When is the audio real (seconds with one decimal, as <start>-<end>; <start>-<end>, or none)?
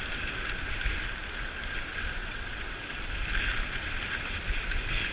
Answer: 0.0-2.2; 2.8-5.1